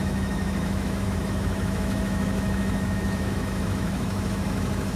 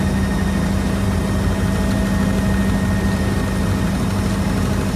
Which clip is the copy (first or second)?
first